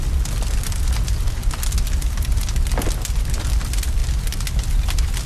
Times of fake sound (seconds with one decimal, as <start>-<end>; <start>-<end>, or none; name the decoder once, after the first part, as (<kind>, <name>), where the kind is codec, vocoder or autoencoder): none